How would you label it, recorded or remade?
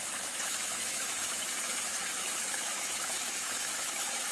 remade